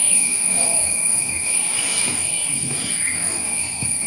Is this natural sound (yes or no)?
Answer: no